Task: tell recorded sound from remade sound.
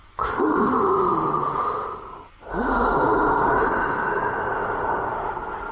recorded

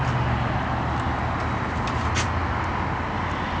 recorded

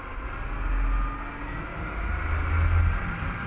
recorded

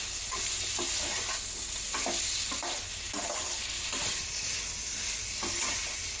recorded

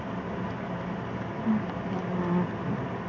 recorded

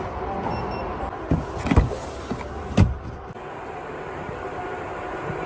recorded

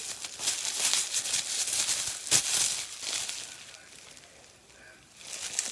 recorded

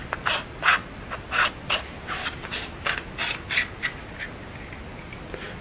recorded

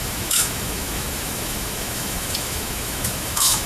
remade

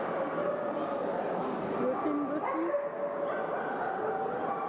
recorded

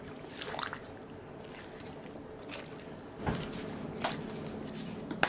recorded